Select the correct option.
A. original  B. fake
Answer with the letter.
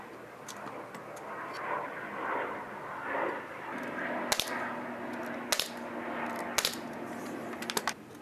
A